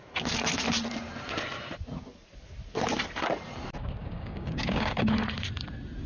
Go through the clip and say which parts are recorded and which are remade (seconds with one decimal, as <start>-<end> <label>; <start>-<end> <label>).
0.0-4.0 recorded; 4.0-5.1 remade; 5.1-6.1 recorded